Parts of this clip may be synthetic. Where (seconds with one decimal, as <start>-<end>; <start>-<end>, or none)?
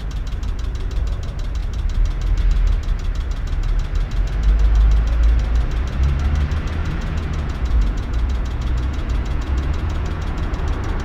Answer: 6.8-10.6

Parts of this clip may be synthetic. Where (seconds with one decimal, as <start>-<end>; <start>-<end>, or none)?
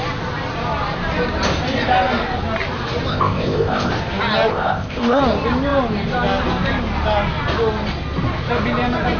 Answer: 3.1-3.9; 4.5-5.2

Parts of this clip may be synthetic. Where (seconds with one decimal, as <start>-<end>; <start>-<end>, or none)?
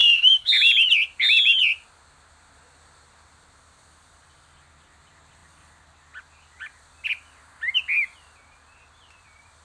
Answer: 0.0-0.5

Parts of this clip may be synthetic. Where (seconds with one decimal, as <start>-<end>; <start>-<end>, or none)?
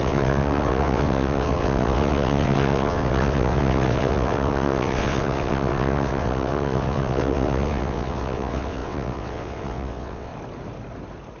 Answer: 0.0-10.3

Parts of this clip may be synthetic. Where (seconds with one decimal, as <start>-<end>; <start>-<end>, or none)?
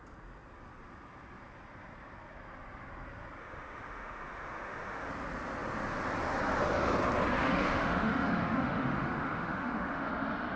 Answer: 3.4-5.1; 7.4-10.1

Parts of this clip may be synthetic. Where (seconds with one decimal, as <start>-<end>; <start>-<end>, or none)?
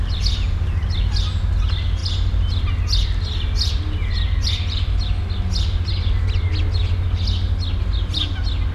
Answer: none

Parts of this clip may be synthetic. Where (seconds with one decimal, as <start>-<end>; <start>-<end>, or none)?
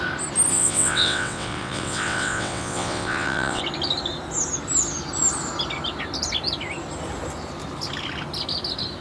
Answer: 0.5-3.6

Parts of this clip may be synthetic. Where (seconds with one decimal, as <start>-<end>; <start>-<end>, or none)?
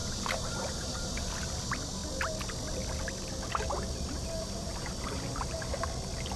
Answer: 0.0-1.3; 4.2-5.7